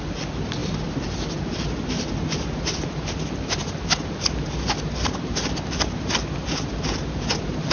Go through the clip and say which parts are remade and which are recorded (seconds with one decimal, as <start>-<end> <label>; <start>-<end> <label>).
0.0-7.7 recorded